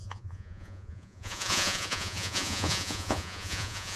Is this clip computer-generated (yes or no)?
yes